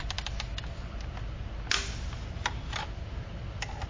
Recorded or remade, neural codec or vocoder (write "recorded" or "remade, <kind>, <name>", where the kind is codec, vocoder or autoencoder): recorded